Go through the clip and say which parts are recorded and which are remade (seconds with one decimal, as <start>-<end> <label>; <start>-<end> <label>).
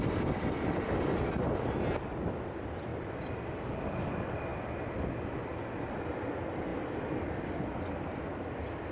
0.0-8.9 recorded